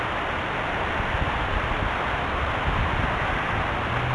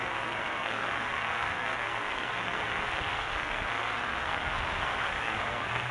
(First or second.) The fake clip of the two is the second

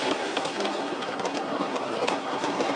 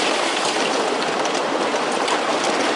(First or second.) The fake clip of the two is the first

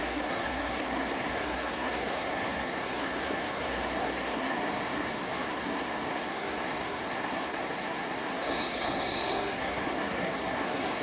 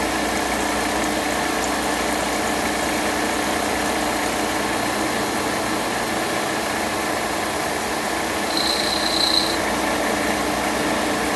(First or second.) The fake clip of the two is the first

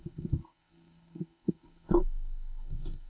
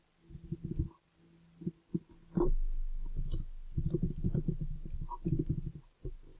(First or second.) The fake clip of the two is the first